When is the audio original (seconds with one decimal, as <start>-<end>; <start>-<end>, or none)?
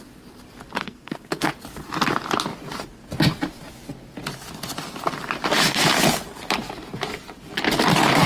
0.0-0.8; 1.5-8.3